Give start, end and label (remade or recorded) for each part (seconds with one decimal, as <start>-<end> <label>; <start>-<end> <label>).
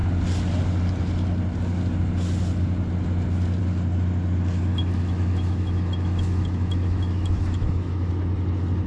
0.0-4.7 recorded; 4.7-8.1 remade; 8.1-8.9 recorded